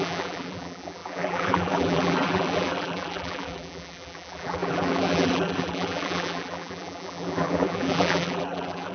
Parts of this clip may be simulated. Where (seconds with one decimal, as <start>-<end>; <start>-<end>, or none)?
0.0-8.9